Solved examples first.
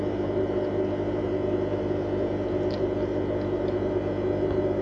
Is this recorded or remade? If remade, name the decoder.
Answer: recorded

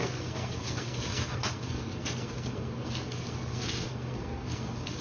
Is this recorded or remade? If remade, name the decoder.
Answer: remade, codec, SNAC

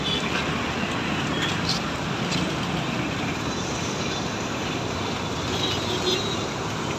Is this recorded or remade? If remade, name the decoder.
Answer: recorded